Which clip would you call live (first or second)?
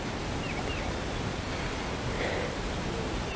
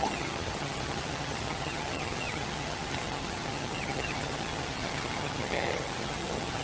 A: first